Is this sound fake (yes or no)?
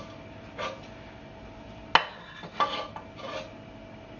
no